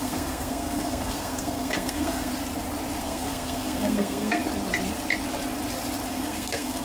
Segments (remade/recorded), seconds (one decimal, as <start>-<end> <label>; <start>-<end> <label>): 0.0-2.3 remade; 2.3-3.0 recorded; 3.0-4.4 remade; 4.4-6.1 recorded; 6.1-6.8 remade